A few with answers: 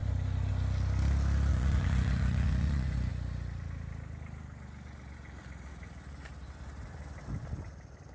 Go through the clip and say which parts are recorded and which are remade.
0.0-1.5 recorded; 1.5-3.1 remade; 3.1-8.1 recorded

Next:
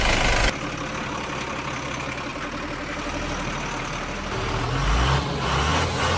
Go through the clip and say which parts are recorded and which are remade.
0.0-6.2 recorded

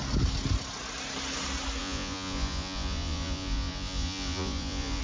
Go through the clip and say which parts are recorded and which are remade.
0.0-1.8 recorded; 1.8-5.0 remade

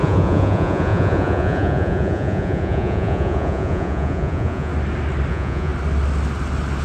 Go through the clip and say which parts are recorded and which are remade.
0.0-4.7 remade; 4.7-5.3 recorded; 5.3-5.7 remade; 5.7-6.8 recorded

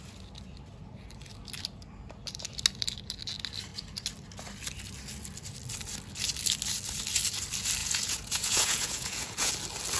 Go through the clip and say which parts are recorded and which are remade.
0.0-7.8 recorded; 7.8-9.5 remade; 9.5-10.0 recorded

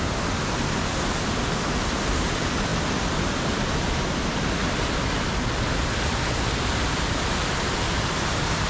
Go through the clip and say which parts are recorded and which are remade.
0.0-8.7 recorded

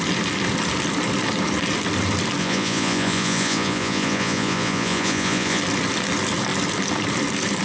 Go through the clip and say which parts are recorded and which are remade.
0.0-2.4 recorded; 2.4-5.6 remade; 5.6-7.6 recorded